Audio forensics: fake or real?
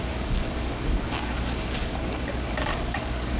fake